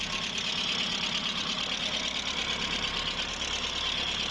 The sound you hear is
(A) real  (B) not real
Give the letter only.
A